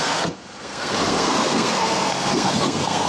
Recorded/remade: remade